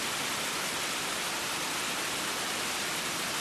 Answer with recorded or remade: remade